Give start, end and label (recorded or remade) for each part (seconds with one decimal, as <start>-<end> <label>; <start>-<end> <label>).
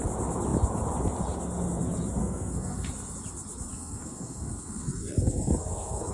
0.0-2.2 recorded; 2.2-2.9 remade; 2.9-3.7 recorded; 3.7-6.1 remade